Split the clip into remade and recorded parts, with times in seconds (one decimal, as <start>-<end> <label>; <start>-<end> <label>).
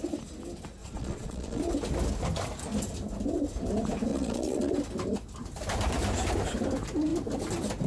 0.0-0.8 recorded; 0.8-1.6 remade; 1.6-4.1 recorded; 4.1-4.7 remade; 4.7-7.9 recorded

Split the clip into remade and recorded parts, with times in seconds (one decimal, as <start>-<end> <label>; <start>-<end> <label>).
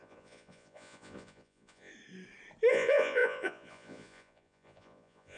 0.0-1.9 remade; 1.9-2.7 recorded; 2.7-5.4 remade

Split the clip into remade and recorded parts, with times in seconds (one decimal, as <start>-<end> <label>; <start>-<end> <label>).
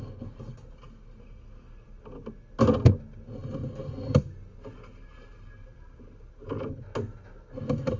0.0-8.0 recorded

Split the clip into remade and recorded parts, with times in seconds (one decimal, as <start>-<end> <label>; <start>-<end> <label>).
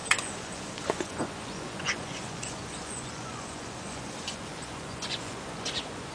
0.0-6.1 remade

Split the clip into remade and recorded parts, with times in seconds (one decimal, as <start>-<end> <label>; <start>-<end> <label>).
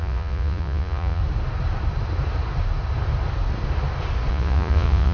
0.0-1.2 remade; 1.2-4.3 recorded; 4.3-5.1 remade